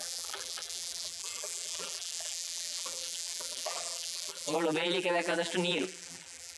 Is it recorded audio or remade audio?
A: remade